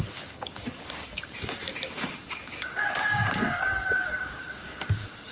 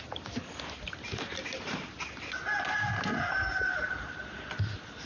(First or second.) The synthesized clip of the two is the first